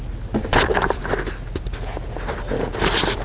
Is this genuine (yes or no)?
yes